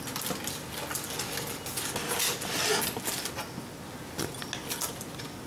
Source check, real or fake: real